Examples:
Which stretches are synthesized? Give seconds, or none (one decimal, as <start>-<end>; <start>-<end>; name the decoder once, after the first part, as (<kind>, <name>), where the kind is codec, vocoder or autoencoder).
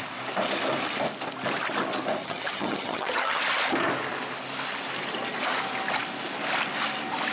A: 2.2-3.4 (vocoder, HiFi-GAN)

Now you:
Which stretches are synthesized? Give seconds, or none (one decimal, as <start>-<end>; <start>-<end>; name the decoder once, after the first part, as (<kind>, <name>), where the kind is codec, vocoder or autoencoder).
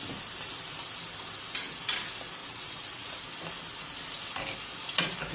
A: 2.4-3.2 (vocoder, WaveNeXt)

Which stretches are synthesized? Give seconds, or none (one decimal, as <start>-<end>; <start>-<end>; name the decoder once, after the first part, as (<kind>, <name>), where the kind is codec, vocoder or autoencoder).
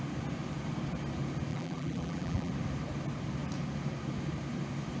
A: 1.5-2.5 (vocoder, BigVGAN v2)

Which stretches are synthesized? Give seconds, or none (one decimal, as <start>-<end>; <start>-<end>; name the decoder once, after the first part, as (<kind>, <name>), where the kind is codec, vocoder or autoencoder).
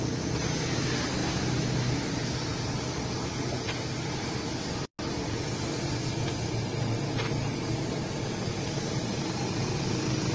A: none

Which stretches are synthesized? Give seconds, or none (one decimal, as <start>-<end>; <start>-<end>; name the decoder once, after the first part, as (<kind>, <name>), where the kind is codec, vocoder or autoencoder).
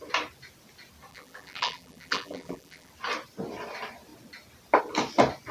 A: 1.1-2.9 (vocoder, BigVGAN v2)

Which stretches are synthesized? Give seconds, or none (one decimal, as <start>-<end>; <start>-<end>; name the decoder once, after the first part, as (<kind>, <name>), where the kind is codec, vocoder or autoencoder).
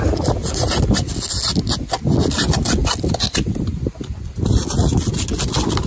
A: 0.4-1.3 (vocoder, BigVGAN v2); 2.8-3.9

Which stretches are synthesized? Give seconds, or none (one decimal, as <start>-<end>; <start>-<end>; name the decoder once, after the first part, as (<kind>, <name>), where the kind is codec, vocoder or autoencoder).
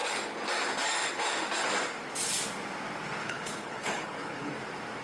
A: 3.2-4.5 (codec, HILCodec)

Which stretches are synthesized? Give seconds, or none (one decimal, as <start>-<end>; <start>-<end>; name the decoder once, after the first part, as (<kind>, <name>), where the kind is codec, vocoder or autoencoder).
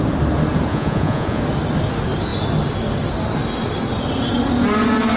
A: 0.7-1.4 (vocoder, Vocos)